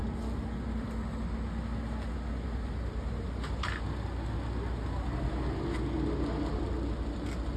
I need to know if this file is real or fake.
real